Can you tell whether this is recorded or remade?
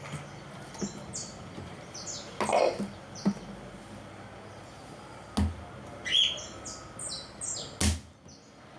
recorded